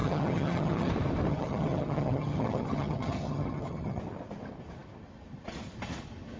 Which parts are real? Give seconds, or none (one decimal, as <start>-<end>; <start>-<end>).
0.9-1.3; 4.0-6.4